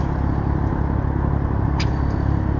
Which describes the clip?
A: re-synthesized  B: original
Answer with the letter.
B